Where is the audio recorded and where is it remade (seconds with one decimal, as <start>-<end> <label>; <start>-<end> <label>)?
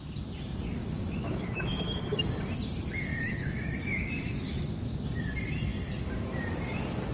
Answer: 0.0-0.8 recorded; 0.8-2.2 remade; 2.2-3.1 recorded; 3.1-5.2 remade; 5.2-7.1 recorded